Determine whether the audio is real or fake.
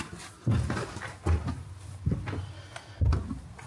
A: real